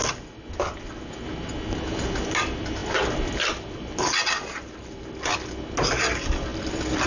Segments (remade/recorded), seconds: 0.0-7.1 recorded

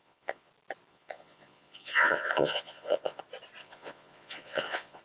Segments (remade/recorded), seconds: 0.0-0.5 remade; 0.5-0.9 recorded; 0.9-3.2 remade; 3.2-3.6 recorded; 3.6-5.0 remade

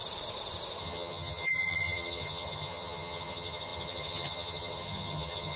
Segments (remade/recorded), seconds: 0.0-0.8 recorded; 0.8-5.6 remade

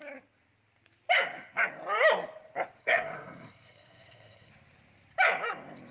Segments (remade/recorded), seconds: 0.0-2.8 recorded; 2.8-4.5 remade; 4.5-5.9 recorded

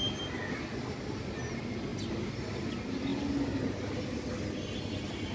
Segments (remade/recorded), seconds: 0.0-5.3 recorded

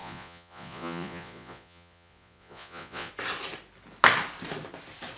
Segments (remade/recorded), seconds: 0.0-3.1 remade; 3.1-5.2 recorded

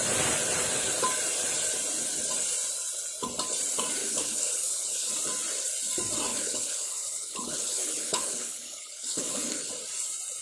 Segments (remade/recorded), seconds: 0.0-4.0 recorded; 4.0-5.1 remade; 5.1-6.3 recorded; 6.3-9.7 remade; 9.7-10.4 recorded